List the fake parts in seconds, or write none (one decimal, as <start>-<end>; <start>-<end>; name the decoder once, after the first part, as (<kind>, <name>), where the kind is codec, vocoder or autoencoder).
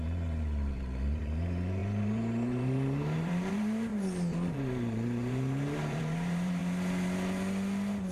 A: 0.0-3.9 (vocoder, BigVGAN v2); 4.5-6.6